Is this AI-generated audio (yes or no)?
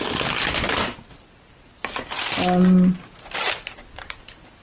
no